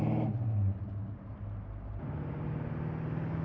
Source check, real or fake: real